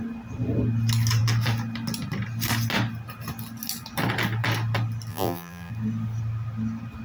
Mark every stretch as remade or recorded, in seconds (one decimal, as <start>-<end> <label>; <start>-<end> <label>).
0.0-5.1 recorded; 5.1-5.7 remade; 5.7-7.0 recorded